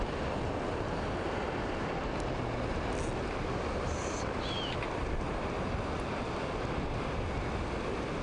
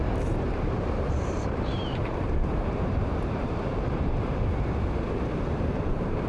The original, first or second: first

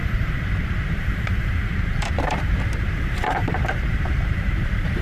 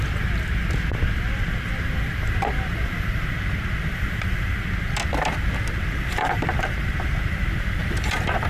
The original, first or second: second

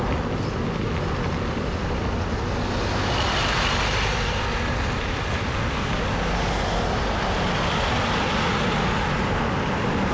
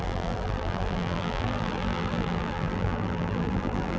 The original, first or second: first